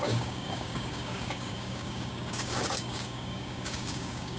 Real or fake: fake